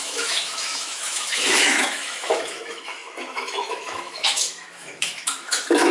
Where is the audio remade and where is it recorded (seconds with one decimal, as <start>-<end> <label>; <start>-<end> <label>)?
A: 0.0-5.9 remade